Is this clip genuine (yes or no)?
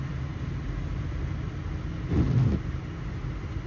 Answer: yes